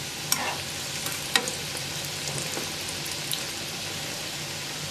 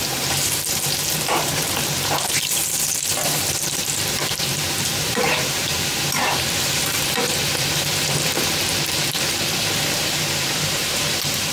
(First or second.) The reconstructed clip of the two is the second